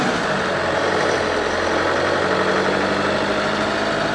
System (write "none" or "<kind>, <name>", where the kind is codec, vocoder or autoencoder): none